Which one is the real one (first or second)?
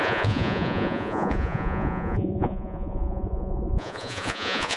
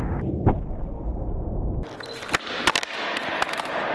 second